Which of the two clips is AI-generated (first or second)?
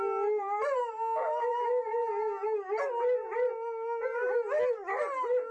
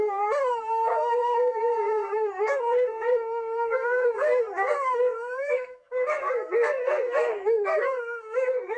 second